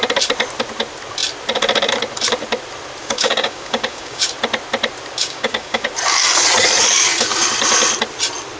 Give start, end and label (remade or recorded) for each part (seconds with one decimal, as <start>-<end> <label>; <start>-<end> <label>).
0.0-3.0 recorded; 3.0-4.3 remade; 4.3-5.2 recorded; 5.2-5.9 remade; 5.9-8.6 recorded